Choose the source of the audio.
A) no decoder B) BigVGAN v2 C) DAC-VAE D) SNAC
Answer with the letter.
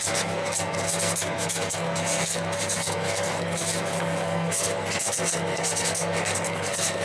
D